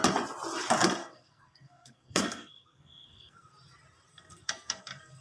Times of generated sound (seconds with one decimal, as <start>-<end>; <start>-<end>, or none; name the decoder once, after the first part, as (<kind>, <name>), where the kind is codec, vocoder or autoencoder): 1.0-3.5 (codec, SNAC); 4.1-5.2